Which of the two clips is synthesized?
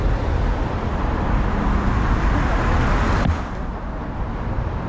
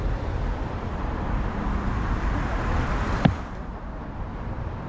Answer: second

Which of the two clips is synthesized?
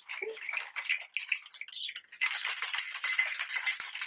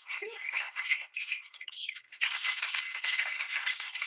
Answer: second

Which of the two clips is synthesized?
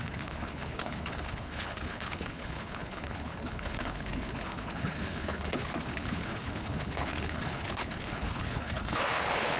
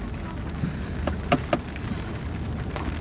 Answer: first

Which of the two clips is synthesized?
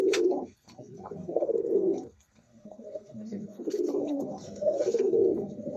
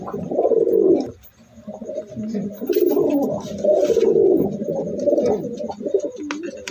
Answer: first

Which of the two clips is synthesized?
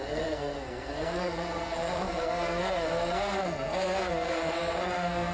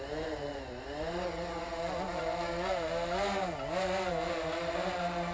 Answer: first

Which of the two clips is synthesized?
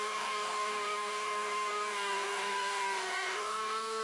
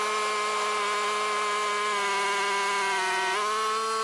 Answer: first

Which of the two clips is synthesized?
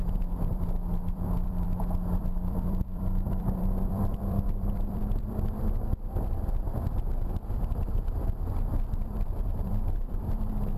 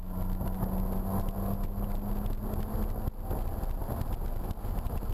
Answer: first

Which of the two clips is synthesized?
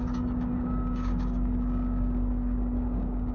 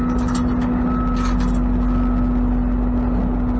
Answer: first